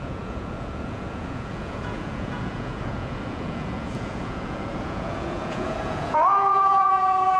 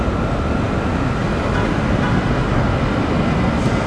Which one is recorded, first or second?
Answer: second